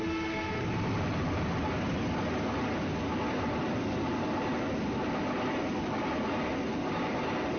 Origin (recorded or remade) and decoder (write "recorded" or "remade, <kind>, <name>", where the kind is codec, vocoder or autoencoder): recorded